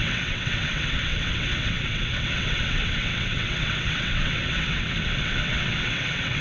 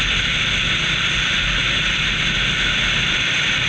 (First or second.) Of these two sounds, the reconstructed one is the first